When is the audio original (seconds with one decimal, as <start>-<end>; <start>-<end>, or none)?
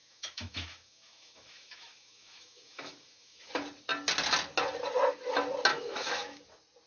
3.5-5.7; 6.4-6.9